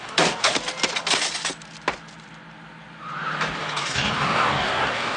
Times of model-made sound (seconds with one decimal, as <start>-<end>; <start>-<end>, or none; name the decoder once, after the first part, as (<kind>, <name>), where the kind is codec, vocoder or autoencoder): 0.0-0.5 (codec, DAC); 3.6-5.2